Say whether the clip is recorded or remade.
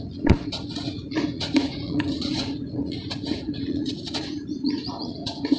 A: remade